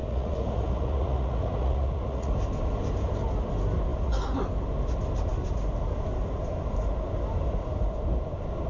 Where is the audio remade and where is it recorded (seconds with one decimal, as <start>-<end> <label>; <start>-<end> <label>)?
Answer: 0.0-2.3 remade; 2.3-8.7 recorded